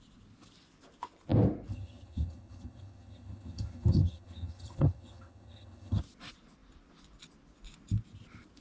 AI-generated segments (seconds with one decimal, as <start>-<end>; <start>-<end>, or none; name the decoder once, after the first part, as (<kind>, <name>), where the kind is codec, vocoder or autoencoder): 1.7-6.0 (vocoder, HiFi-GAN)